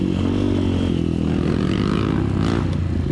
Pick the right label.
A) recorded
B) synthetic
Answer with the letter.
A